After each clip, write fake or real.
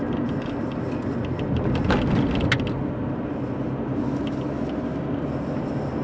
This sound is real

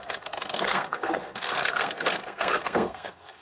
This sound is fake